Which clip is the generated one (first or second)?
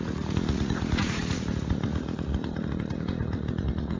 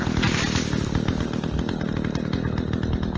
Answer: first